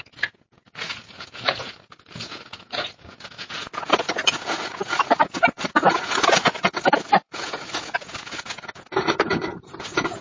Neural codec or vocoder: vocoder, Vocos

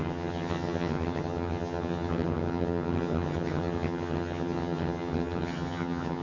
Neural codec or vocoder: vocoder, HiFi-GAN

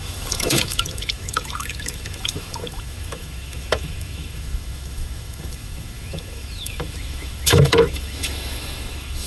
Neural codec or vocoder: autoencoder, DAC-VAE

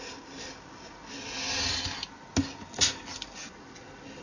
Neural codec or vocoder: none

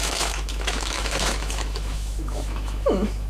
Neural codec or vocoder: autoencoder, DAC-VAE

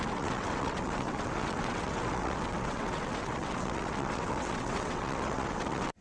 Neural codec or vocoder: vocoder, WaveNeXt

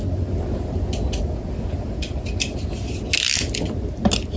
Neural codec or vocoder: none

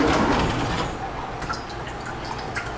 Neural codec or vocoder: none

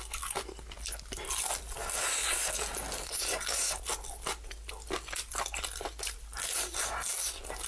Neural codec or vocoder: none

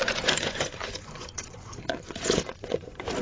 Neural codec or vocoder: vocoder, Vocos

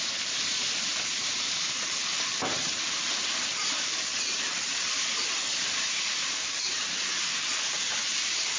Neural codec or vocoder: vocoder, BigVGAN v2